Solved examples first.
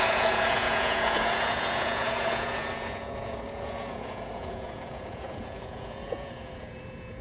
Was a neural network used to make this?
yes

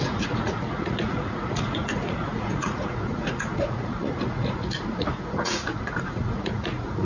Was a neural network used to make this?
yes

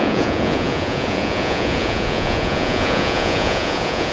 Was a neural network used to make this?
yes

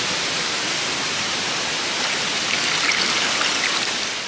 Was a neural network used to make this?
no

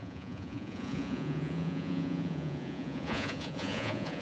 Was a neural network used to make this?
yes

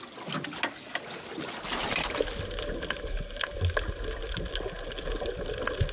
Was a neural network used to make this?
no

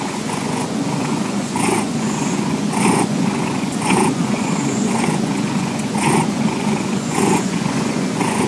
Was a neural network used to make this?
yes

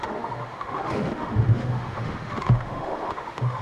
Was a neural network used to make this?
yes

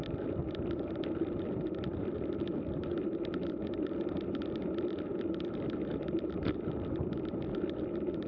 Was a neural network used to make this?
yes